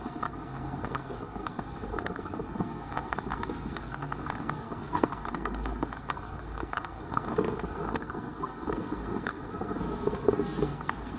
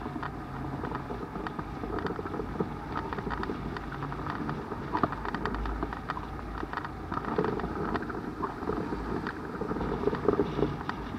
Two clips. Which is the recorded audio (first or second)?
second